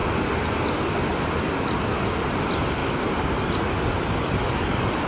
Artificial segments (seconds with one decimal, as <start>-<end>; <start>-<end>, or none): none